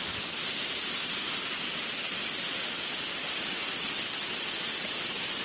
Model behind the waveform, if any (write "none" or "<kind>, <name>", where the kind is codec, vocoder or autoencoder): vocoder, BigVGAN v2